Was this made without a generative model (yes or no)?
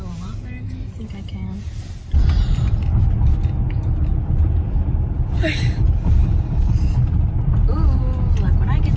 yes